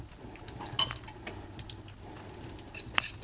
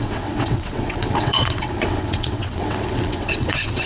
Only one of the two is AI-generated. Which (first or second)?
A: second